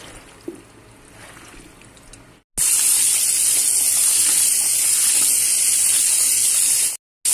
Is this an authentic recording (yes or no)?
yes